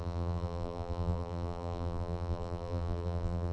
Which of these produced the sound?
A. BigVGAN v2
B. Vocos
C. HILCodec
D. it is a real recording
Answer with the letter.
A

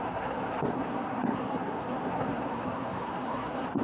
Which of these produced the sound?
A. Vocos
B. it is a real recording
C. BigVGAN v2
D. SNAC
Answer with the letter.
D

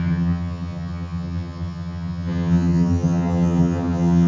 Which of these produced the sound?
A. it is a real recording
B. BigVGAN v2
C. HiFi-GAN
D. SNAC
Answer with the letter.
C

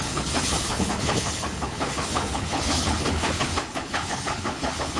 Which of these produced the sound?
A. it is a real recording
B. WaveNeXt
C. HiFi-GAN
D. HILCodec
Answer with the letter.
D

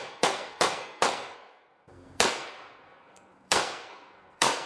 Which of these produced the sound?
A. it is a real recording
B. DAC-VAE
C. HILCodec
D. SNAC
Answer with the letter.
D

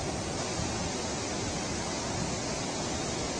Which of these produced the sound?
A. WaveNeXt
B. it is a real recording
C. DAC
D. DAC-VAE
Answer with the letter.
B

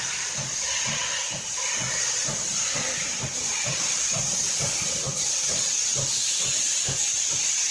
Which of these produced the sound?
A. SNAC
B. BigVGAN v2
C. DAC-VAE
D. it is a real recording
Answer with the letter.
D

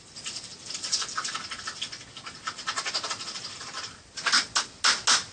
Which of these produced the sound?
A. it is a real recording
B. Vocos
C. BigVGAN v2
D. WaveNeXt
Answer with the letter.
A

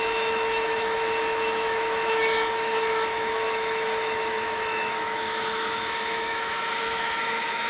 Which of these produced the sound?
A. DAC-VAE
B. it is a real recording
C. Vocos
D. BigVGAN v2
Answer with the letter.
A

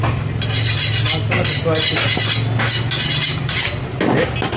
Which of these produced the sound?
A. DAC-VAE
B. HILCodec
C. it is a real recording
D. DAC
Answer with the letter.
C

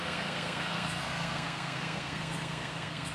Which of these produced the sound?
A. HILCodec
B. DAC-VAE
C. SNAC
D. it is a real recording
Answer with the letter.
C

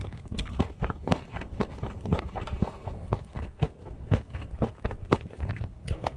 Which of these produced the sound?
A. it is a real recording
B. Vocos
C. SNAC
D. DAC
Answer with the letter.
C